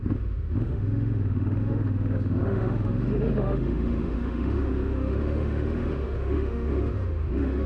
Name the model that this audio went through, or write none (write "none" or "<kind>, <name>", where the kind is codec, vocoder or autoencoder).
autoencoder, DAC-VAE